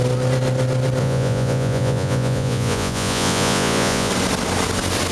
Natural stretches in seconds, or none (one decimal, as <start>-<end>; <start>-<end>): 0.0-1.0; 4.1-5.1